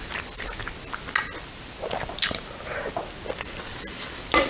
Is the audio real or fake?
real